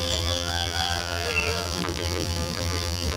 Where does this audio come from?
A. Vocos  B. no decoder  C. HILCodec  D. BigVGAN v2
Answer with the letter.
D